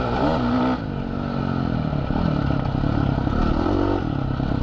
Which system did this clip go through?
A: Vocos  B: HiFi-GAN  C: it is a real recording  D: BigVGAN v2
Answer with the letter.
C